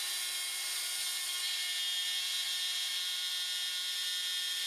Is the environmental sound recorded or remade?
recorded